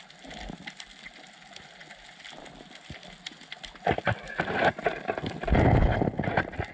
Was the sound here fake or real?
real